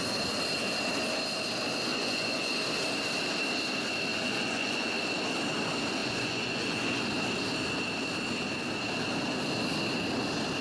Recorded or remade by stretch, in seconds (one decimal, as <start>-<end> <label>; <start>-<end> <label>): 0.0-1.9 recorded; 1.9-2.6 remade; 2.6-4.1 recorded; 4.1-4.9 remade; 4.9-6.0 recorded; 6.0-7.0 remade; 7.0-10.6 recorded